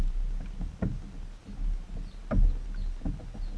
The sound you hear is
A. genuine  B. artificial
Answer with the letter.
A